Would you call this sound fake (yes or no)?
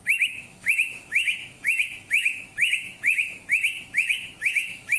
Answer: yes